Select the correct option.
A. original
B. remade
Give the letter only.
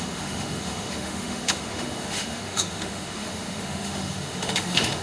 B